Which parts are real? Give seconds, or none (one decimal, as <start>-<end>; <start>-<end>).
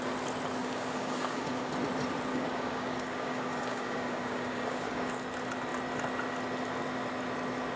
0.0-0.6; 1.7-2.3; 5.1-7.8